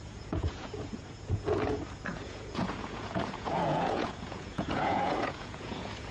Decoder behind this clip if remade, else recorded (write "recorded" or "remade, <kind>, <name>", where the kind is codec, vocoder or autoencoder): remade, vocoder, Vocos